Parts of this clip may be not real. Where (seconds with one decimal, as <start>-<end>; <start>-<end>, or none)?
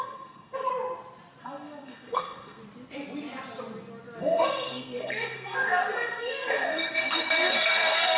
0.0-0.7; 1.4-2.6; 4.2-8.2